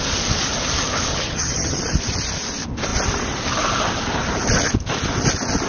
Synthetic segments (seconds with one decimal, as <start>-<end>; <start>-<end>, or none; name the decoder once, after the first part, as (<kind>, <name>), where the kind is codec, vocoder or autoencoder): 1.1-1.8 (vocoder, HiFi-GAN)